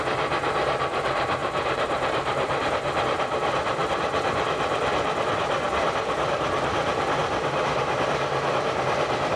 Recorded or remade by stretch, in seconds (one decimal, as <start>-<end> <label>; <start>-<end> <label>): 0.0-1.4 recorded; 1.4-2.7 remade; 2.7-7.2 recorded; 7.2-8.3 remade; 8.3-9.4 recorded